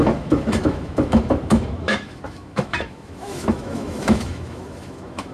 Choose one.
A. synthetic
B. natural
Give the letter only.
A